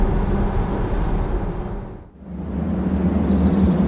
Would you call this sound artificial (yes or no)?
no